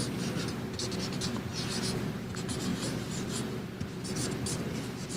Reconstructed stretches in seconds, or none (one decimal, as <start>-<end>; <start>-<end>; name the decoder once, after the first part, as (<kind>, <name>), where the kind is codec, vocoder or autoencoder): 0.0-5.2 (vocoder, BigVGAN v2)